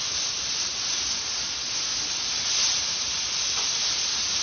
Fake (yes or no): no